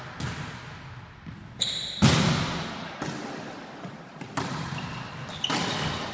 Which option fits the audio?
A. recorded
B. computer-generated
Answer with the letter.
A